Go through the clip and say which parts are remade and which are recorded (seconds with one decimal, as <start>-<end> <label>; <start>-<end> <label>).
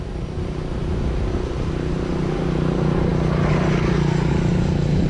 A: 0.0-5.1 recorded